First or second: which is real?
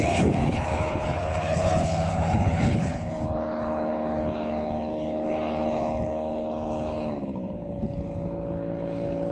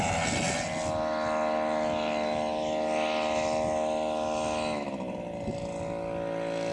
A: second